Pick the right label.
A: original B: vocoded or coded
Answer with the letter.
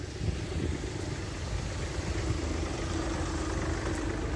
A